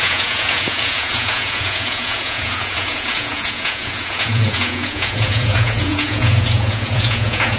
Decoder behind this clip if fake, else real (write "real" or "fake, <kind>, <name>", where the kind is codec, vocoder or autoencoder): fake, vocoder, Vocos